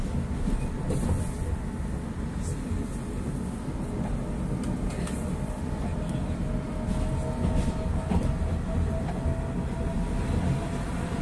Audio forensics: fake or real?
real